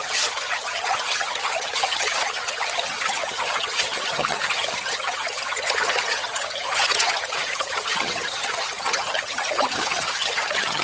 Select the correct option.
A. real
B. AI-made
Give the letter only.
B